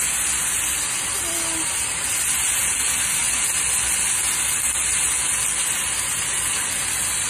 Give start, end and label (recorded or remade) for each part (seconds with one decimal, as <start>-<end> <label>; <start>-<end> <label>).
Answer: 0.0-7.3 recorded